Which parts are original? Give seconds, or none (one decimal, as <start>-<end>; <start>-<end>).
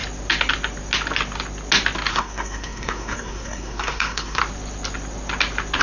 0.0-2.1; 4.4-5.8